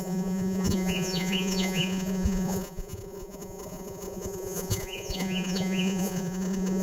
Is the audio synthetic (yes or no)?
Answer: yes